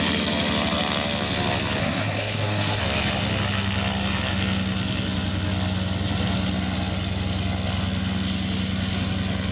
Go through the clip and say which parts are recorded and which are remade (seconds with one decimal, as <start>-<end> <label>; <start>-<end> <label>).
0.0-1.8 recorded; 1.8-2.8 remade; 2.8-9.5 recorded

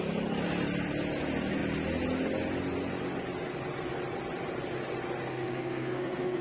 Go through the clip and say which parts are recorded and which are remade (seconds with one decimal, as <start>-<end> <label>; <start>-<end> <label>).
0.0-5.3 recorded; 5.3-6.4 remade